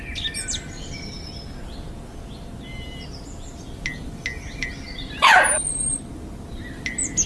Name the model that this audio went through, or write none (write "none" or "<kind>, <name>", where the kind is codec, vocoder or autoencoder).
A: none